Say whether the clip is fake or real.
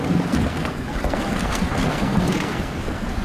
fake